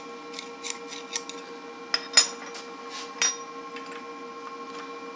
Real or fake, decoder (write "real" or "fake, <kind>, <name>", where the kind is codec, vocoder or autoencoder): real